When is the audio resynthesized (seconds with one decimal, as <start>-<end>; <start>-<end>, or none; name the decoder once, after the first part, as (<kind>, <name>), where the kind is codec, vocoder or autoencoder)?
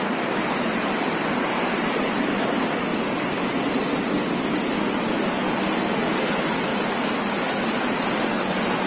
none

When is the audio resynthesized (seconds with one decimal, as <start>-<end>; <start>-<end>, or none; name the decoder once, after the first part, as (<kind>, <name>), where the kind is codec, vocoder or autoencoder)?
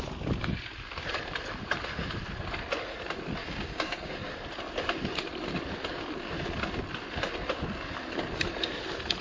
3.4-4.1 (codec, DAC)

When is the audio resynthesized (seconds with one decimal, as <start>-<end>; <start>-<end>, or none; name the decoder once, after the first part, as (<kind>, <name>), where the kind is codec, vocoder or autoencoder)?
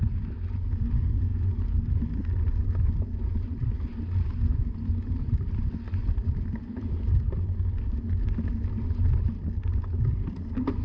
none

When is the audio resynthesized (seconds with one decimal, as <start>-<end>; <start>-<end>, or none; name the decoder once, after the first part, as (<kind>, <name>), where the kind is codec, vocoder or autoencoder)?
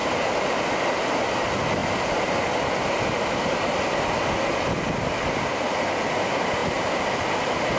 none